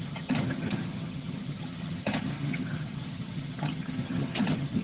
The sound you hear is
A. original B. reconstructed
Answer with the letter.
B